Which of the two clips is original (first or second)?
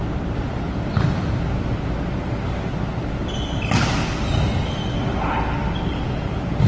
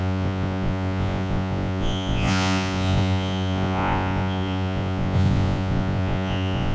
first